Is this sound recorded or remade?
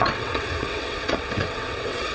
remade